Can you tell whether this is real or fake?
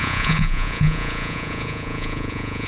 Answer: fake